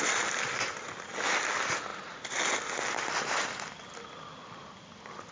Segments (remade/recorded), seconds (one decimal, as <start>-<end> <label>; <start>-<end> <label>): 0.0-0.5 recorded; 0.5-1.1 remade; 1.1-5.3 recorded